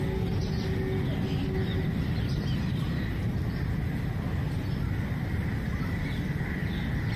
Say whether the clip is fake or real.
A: real